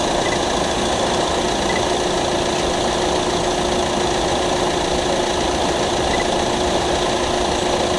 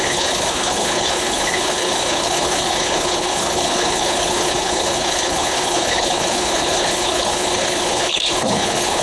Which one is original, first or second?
first